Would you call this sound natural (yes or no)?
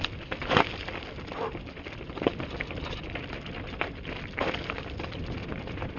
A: yes